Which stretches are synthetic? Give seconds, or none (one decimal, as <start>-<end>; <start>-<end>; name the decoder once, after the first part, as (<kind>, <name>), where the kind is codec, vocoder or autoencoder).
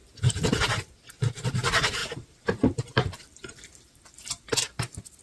0.0-0.9 (vocoder, BigVGAN v2); 2.0-4.8